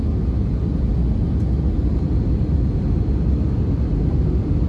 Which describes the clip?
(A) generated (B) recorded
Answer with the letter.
B